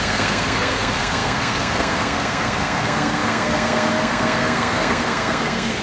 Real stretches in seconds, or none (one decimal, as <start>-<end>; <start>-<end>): none